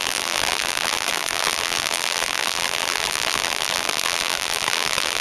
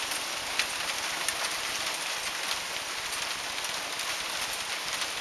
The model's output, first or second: first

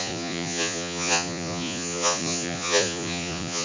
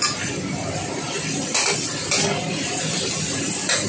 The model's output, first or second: first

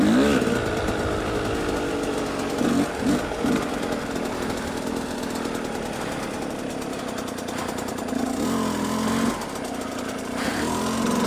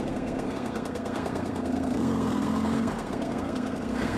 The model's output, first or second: second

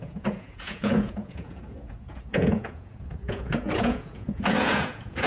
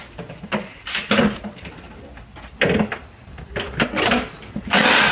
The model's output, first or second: first